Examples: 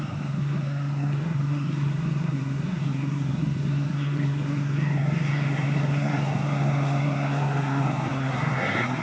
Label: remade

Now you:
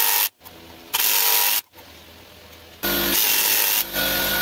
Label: recorded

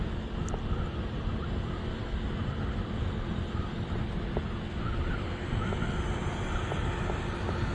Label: recorded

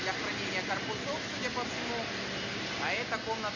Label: recorded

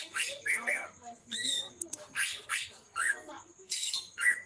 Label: remade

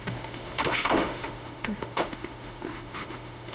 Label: remade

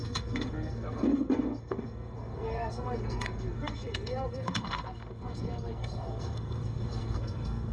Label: remade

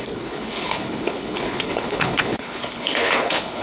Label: remade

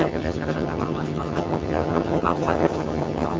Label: remade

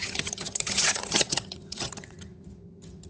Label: remade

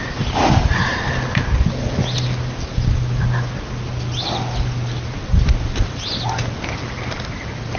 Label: recorded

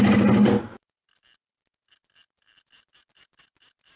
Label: recorded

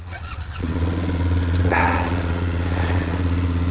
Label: remade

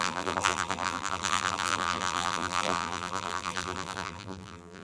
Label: remade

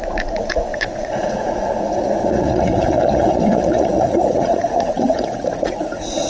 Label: remade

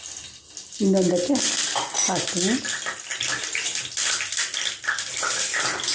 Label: recorded